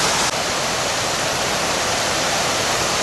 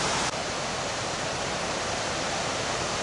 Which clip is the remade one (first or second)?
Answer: second